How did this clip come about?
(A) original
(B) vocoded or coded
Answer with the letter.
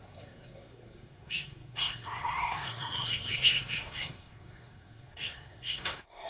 B